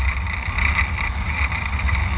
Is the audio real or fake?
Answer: real